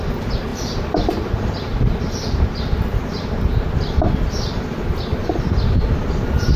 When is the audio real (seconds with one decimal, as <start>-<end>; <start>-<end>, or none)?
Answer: 0.0-0.5; 4.1-6.6